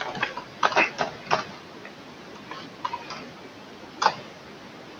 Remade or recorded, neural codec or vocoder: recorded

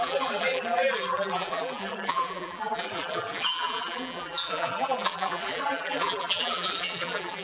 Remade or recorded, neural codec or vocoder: remade, vocoder, BigVGAN v2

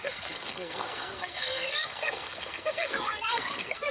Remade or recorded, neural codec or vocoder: remade, codec, SNAC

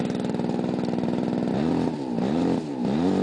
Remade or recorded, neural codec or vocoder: remade, vocoder, BigVGAN v2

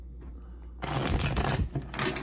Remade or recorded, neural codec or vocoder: recorded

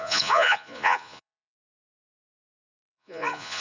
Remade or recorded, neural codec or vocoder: remade, vocoder, Vocos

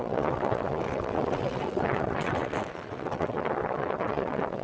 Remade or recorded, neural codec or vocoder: remade, vocoder, WaveNeXt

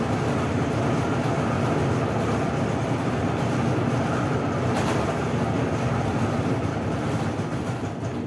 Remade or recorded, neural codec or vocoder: recorded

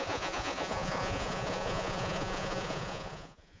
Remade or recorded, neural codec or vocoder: remade, vocoder, Vocos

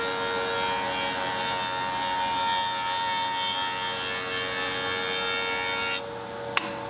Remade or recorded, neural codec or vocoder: recorded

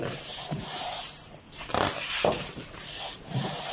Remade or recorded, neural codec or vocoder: remade, vocoder, BigVGAN v2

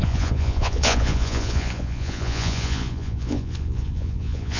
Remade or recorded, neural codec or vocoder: remade, vocoder, Vocos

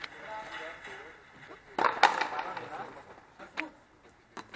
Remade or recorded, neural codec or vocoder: recorded